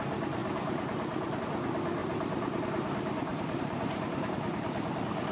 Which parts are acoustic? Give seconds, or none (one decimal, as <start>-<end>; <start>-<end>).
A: 0.0-0.4; 1.4-2.0; 2.6-3.3; 4.3-5.3